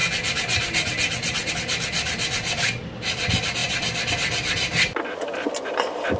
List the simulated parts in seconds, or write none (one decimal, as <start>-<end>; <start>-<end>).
none